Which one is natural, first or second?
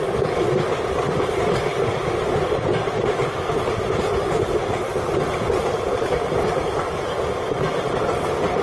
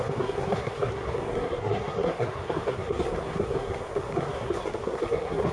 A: first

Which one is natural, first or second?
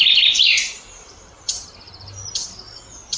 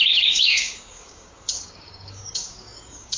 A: first